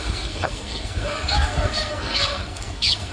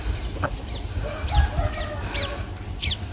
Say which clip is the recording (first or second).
second